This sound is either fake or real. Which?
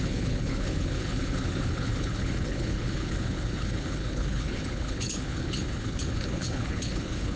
fake